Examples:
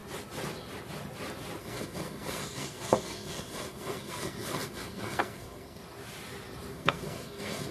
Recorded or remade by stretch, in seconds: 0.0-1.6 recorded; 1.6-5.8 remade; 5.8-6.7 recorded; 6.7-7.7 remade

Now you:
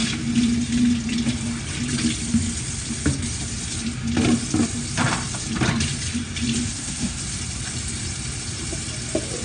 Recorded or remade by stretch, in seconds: 0.0-6.7 recorded; 6.7-7.2 remade; 7.2-9.4 recorded

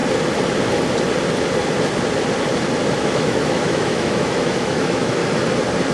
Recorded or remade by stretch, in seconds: 0.0-3.0 recorded; 3.0-5.2 remade; 5.2-5.9 recorded